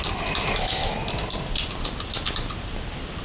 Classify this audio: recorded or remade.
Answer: recorded